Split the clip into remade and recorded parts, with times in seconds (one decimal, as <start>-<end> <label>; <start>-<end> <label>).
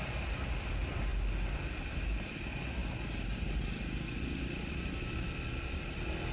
0.0-6.3 recorded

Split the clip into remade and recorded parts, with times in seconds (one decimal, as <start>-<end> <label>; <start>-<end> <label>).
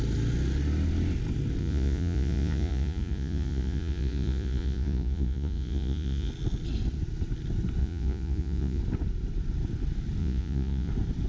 0.0-1.6 recorded; 1.6-6.3 remade; 6.3-7.8 recorded; 7.8-8.8 remade; 8.8-10.2 recorded; 10.2-10.9 remade; 10.9-11.3 recorded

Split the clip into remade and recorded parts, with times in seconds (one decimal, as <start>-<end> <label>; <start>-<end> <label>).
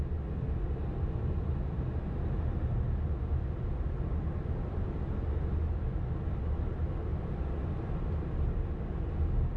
0.0-9.6 recorded